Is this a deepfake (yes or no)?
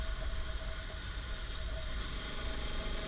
no